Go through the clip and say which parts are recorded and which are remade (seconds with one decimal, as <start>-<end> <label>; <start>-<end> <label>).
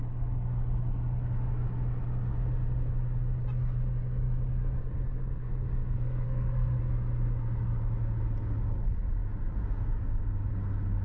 0.0-5.2 recorded; 5.2-6.8 remade; 6.8-11.0 recorded